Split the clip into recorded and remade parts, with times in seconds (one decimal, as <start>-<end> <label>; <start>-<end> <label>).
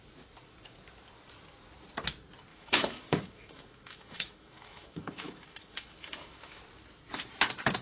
0.0-2.5 recorded; 2.5-6.6 remade; 6.6-7.8 recorded